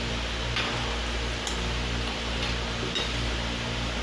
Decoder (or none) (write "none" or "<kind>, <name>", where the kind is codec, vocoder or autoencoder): none